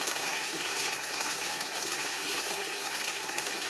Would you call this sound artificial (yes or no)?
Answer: yes